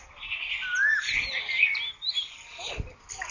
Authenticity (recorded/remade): recorded